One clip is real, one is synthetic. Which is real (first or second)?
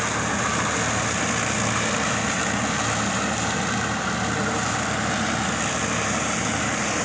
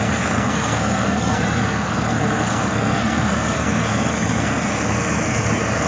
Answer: first